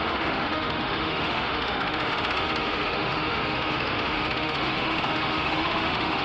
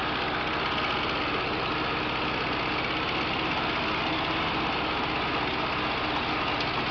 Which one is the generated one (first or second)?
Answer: first